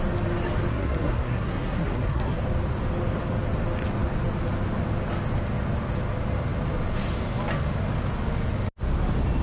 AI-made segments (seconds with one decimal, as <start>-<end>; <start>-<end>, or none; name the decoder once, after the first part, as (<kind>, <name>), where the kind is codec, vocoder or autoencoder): 0.7-2.4 (codec, SNAC)